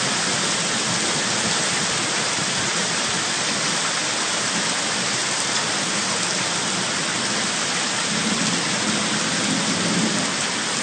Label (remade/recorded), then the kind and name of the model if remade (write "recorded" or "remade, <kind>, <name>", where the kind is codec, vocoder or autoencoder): recorded